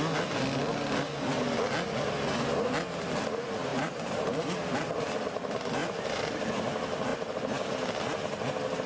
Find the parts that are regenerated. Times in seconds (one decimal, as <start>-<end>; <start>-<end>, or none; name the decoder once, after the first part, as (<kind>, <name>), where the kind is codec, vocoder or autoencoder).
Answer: 3.7-5.0 (vocoder, BigVGAN v2); 5.8-6.5; 7.1-7.7